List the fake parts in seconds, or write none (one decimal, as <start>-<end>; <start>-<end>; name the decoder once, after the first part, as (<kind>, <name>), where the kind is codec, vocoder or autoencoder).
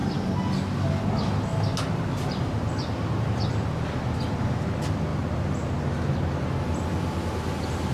none